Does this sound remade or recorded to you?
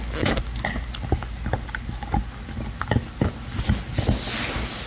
recorded